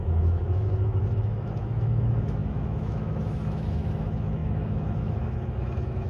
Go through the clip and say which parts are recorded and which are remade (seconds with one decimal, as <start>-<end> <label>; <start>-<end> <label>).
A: 0.0-6.1 remade